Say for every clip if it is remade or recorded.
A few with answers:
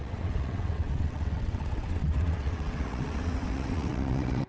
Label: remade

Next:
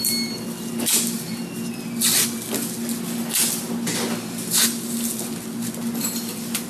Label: recorded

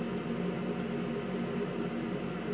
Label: recorded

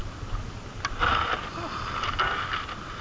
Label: recorded